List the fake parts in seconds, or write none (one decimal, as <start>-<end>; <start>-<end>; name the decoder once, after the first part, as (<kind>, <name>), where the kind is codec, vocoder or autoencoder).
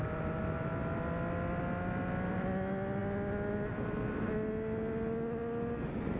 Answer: none